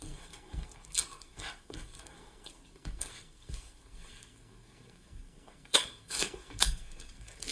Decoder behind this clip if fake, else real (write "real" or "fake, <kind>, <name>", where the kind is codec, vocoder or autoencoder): fake, codec, SNAC